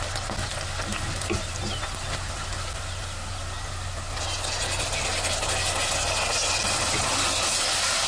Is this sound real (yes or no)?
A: yes